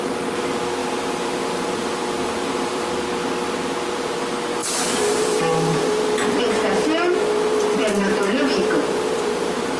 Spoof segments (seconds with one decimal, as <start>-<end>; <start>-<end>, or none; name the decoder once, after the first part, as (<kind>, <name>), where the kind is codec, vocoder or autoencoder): 0.8-2.9 (vocoder, BigVGAN v2); 4.6-9.8